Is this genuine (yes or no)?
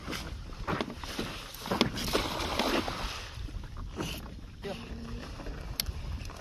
yes